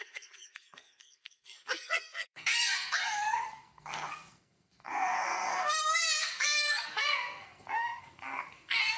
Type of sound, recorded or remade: remade